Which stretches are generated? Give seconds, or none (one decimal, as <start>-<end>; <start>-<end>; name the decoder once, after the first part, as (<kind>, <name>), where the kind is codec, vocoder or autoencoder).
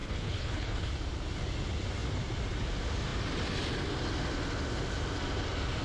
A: 0.0-0.9 (codec, HILCodec)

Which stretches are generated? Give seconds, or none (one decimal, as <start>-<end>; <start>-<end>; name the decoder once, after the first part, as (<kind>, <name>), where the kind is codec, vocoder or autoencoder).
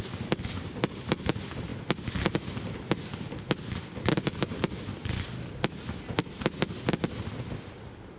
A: none